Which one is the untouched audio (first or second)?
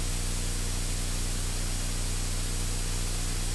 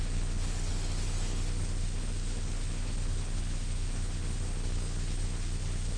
first